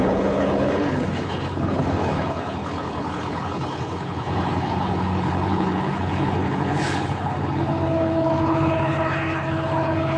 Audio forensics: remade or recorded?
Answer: remade